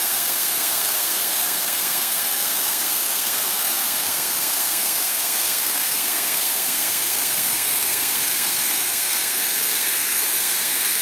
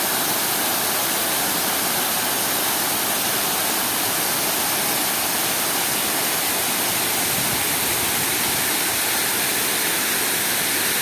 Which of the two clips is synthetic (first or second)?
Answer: first